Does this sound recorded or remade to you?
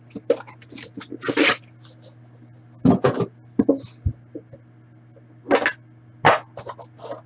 recorded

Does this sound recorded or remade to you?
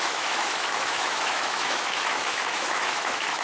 remade